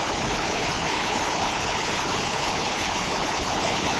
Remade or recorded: remade